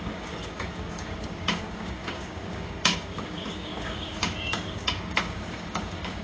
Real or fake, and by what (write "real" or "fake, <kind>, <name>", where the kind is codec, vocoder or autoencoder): fake, codec, DAC